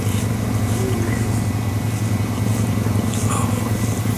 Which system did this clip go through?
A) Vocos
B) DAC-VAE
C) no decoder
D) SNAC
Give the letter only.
C